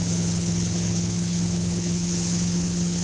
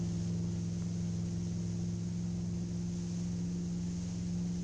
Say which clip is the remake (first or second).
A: first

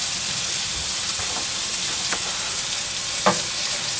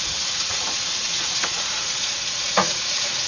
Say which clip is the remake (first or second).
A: second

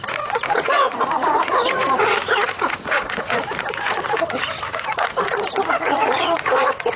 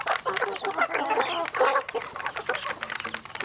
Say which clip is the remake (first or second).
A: first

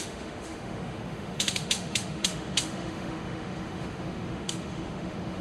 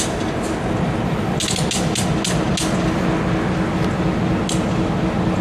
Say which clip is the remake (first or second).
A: first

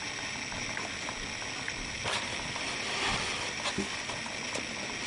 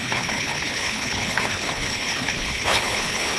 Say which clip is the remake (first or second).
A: second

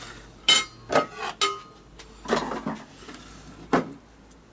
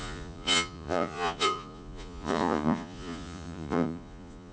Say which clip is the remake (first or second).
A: second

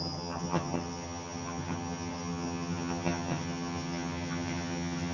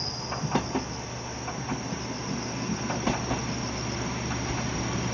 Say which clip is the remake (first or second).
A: first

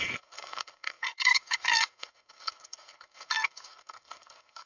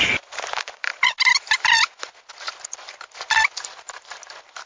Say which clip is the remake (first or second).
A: first